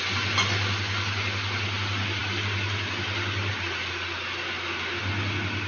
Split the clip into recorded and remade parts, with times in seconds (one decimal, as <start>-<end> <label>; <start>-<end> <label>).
0.0-5.7 recorded